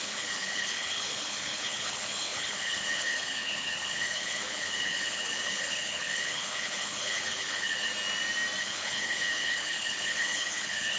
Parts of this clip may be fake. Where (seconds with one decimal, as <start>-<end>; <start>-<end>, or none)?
0.0-7.9; 8.6-11.0